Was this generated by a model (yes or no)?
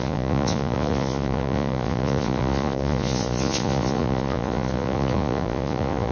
yes